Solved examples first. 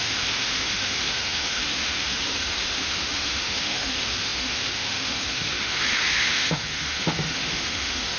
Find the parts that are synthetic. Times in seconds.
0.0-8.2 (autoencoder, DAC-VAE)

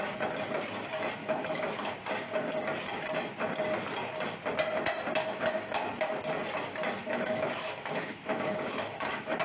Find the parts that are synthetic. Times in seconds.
1.2-1.9 (autoencoder, DAC-VAE); 5.2-6.2; 7.0-9.4

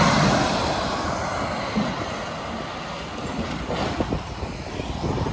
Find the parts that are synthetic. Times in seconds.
none

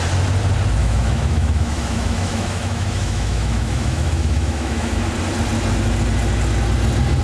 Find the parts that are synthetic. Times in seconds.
0.8-5.1 (autoencoder, DAC-VAE)

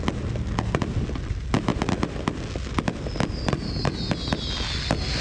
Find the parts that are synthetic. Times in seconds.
none